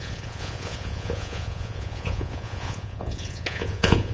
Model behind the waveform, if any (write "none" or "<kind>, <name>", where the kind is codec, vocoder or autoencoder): vocoder, Vocos